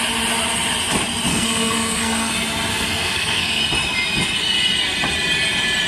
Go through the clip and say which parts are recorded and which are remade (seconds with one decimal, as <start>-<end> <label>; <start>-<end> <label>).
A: 0.0-1.3 recorded; 1.3-2.3 remade; 2.3-2.7 recorded; 2.7-3.6 remade; 3.6-5.9 recorded